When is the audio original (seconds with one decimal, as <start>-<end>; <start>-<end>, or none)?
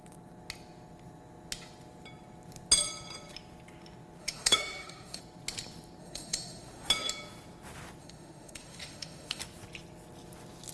0.0-4.2; 5.2-6.0; 6.9-8.0; 9.4-10.7